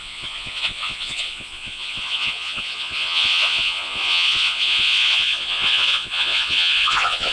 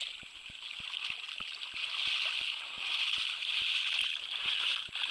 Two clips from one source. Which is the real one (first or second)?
second